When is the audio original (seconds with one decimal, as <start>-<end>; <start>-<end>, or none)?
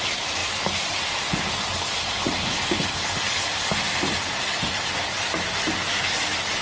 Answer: 0.0-6.6